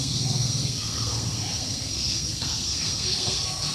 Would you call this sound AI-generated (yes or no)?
yes